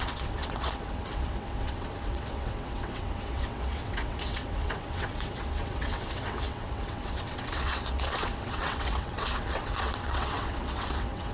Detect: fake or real fake